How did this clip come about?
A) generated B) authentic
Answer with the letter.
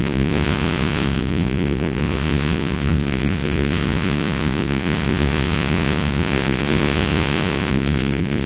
A